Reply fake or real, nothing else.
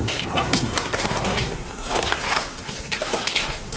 fake